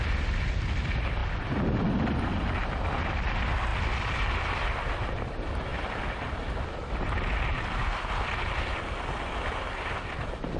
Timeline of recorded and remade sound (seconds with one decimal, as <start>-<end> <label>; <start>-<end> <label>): 0.0-10.6 recorded